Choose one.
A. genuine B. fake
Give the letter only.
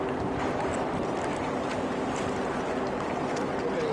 A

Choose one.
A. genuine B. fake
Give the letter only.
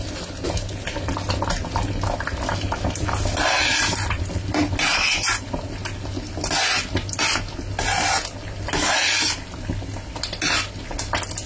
A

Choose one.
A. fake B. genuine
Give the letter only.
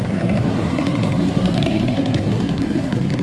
A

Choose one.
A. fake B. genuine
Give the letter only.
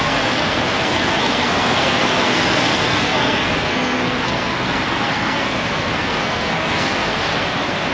A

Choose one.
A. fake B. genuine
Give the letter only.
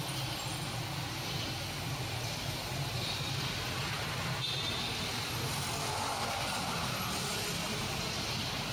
B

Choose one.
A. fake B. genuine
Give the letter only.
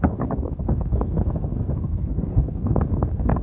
A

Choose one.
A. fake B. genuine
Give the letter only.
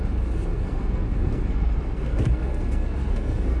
A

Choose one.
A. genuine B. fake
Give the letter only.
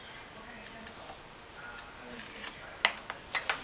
A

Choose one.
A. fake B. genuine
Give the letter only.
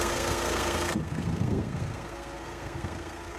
A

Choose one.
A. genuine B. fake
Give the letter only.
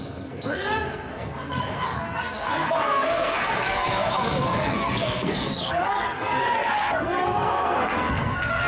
B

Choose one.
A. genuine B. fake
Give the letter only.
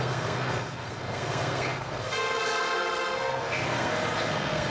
B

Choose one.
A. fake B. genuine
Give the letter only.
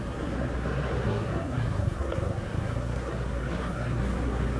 A